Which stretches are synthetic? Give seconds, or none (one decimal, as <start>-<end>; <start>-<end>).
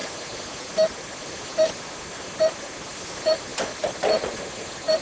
none